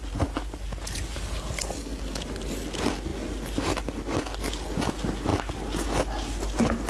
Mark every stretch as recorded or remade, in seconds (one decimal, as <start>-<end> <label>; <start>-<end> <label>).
0.0-6.9 recorded